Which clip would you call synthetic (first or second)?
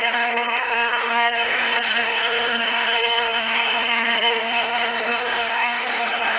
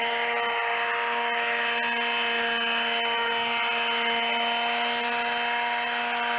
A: first